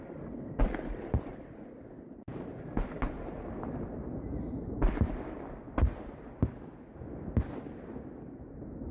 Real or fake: real